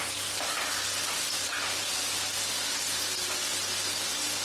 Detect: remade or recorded recorded